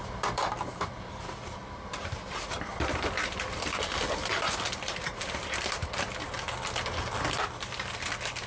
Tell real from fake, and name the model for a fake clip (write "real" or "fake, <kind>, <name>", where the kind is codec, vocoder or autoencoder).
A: fake, vocoder, BigVGAN v2